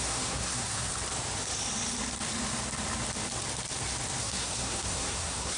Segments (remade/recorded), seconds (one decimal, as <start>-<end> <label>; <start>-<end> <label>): 0.0-0.9 remade; 0.9-4.2 recorded; 4.2-5.6 remade